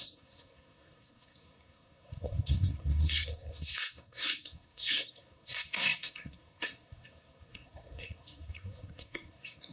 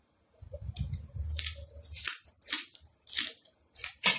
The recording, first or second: second